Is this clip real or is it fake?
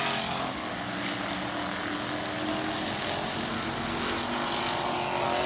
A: real